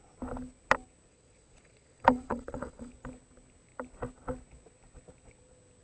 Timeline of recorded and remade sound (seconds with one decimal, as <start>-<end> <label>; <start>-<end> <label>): 0.0-1.1 recorded; 1.1-2.9 remade; 2.9-5.8 recorded